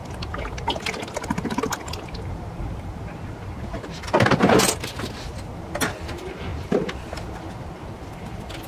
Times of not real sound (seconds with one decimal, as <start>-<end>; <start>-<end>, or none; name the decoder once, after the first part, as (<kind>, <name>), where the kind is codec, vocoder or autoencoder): none